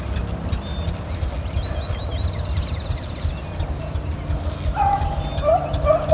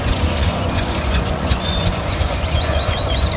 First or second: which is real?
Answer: first